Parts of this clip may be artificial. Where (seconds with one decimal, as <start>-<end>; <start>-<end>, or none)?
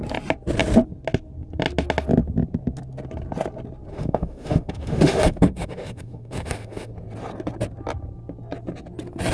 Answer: 3.9-6.9